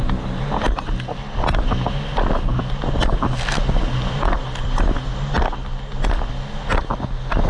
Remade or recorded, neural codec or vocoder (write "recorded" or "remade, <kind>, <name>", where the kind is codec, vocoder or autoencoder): recorded